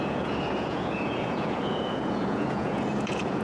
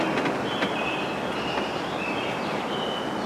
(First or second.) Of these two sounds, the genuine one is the second